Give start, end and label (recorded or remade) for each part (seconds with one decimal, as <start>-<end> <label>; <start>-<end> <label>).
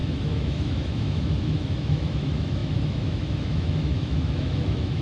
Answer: 0.0-5.0 remade